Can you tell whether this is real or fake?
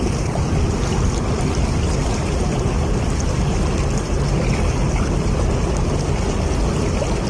real